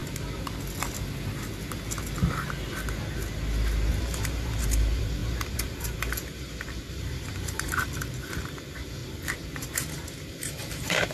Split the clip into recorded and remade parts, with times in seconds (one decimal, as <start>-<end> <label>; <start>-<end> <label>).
0.0-4.0 recorded; 4.0-11.1 remade